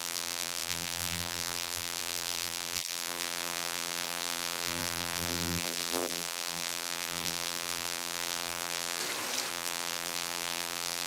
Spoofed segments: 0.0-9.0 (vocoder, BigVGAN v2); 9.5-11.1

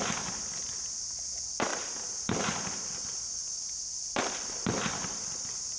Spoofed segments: 1.7-3.0 (vocoder, BigVGAN v2)

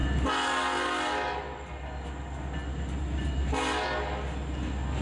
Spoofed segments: none

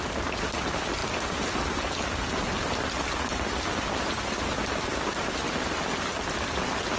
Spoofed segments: none